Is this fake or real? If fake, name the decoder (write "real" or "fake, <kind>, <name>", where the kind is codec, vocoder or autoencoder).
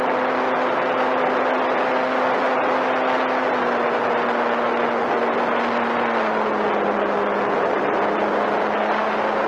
real